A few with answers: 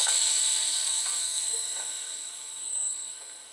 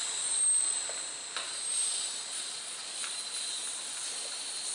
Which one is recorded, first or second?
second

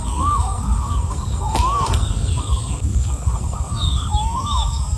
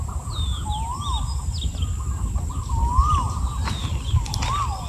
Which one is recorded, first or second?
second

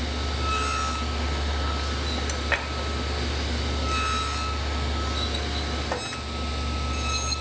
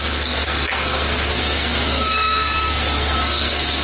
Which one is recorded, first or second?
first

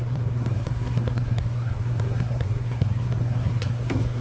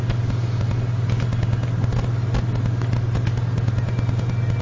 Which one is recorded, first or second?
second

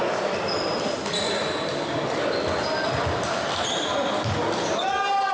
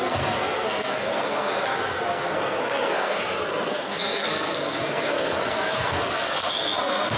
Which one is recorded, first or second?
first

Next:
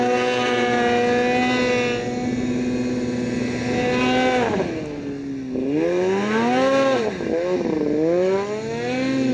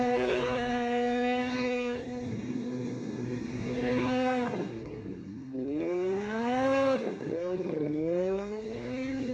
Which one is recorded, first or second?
first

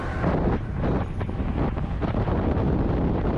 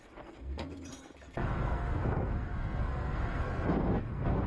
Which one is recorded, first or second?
first